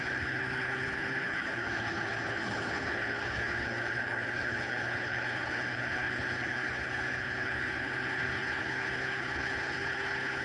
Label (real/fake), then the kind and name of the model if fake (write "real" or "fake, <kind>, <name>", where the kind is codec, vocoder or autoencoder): fake, codec, HILCodec